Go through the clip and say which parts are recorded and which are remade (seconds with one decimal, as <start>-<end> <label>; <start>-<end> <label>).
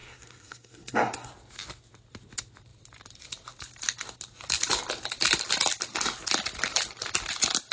0.0-1.3 remade; 1.3-7.7 recorded